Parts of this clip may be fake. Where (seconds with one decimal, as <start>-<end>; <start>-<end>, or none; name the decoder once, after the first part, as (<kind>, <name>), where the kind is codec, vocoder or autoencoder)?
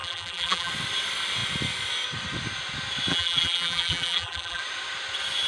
0.0-0.7 (vocoder, BigVGAN v2); 3.1-4.6